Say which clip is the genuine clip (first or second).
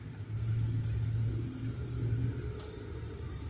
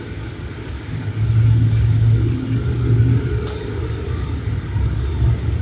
first